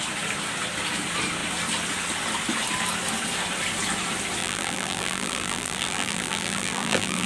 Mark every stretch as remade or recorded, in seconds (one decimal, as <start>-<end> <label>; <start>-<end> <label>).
0.0-4.4 recorded; 4.4-7.3 remade